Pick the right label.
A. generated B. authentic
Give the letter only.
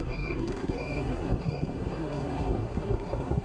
A